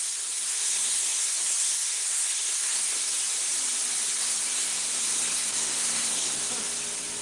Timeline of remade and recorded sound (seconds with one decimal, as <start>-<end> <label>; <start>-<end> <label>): 0.0-3.1 remade; 3.1-4.2 recorded; 4.2-6.4 remade; 6.4-7.2 recorded